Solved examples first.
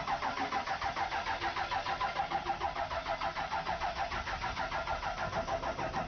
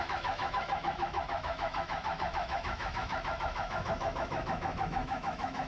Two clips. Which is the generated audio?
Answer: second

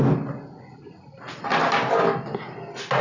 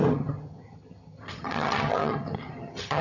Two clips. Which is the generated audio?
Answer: second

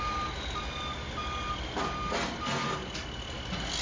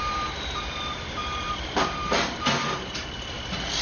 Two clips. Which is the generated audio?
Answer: second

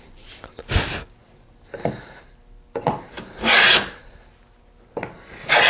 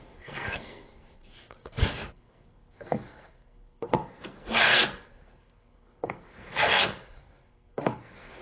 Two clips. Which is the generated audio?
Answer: second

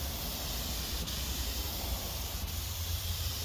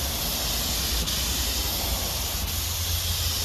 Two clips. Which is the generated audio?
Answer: first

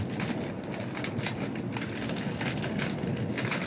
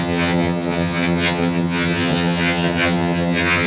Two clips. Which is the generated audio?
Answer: second